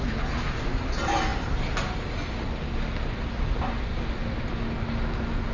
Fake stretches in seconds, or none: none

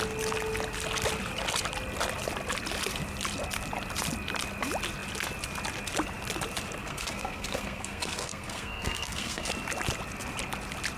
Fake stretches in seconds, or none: 6.8-9.5 (codec, SNAC)

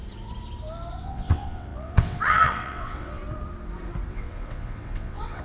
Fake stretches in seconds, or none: 1.0-3.2 (vocoder, WaveNeXt); 4.1-5.4

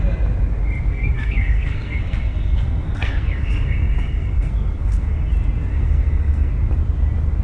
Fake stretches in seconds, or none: 0.9-5.3 (codec, SNAC); 5.7-6.5

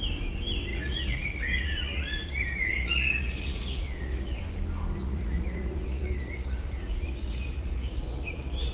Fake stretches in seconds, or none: 0.7-4.4 (vocoder, Vocos); 5.0-8.7